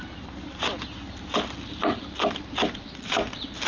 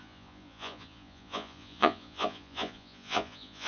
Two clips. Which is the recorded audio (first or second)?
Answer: first